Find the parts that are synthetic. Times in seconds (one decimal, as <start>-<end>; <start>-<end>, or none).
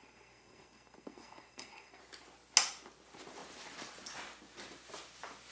0.0-2.0